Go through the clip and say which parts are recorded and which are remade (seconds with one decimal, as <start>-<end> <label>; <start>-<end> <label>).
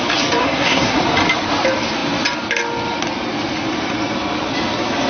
0.0-0.4 recorded; 0.4-1.0 remade; 1.0-5.1 recorded